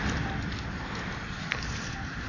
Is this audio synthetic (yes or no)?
no